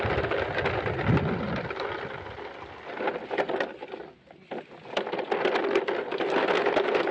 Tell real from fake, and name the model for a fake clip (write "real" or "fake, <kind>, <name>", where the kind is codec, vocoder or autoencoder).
real